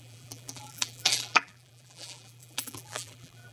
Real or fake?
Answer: fake